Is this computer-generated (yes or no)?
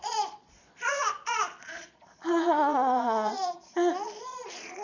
yes